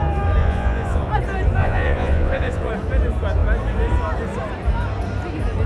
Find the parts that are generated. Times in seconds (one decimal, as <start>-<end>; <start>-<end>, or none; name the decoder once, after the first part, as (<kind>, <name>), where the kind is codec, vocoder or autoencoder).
0.4-1.1 (vocoder, Vocos); 1.6-2.7